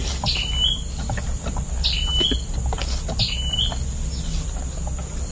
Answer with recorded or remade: recorded